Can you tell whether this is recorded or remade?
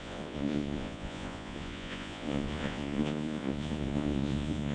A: remade